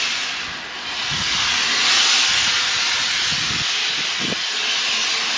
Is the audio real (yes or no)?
yes